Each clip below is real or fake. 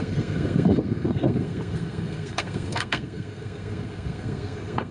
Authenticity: fake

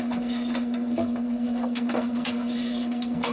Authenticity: fake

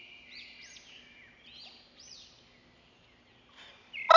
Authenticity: real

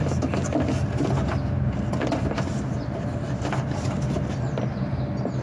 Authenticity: real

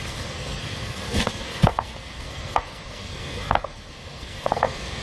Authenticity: fake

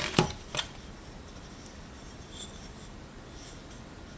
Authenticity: real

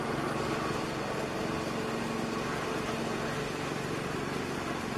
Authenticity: real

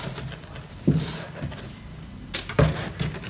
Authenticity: real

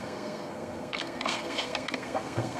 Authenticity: fake